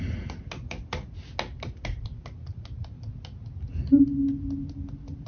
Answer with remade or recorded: recorded